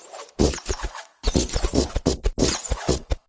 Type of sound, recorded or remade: remade